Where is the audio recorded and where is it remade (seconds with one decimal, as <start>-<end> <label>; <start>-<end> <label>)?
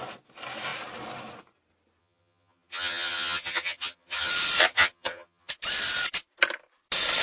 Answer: 0.0-2.0 recorded; 2.0-4.3 remade; 4.3-4.7 recorded; 4.7-5.5 remade; 5.5-7.2 recorded